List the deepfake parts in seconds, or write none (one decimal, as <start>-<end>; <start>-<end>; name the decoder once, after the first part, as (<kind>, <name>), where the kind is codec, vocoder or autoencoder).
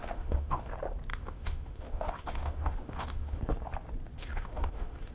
0.0-0.7 (autoencoder, DAC-VAE); 1.1-3.4; 4.2-5.1